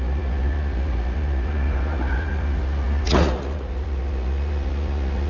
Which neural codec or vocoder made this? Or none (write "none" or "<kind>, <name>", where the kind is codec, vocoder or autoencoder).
vocoder, Vocos